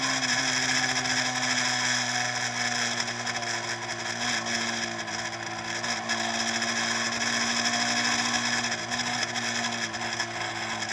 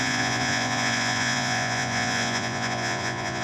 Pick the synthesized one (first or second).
second